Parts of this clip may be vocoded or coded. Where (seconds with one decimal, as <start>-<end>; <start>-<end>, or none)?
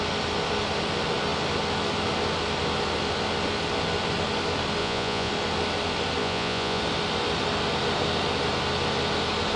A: 4.8-5.3; 6.2-6.8